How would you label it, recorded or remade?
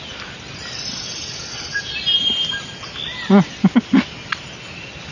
recorded